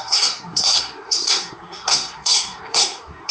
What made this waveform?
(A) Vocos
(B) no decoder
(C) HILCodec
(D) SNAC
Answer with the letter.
D